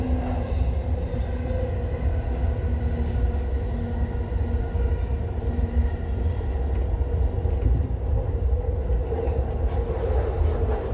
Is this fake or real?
real